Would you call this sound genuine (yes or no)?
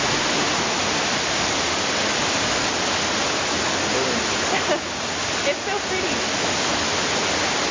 yes